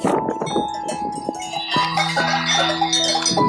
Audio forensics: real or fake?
real